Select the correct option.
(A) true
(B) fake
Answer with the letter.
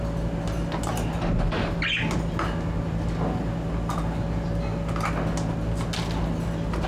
A